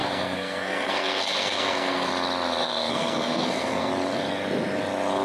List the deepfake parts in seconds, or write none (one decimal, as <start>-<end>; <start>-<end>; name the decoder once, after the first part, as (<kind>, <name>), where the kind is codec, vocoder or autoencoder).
0.0-2.1 (codec, SNAC); 2.6-3.9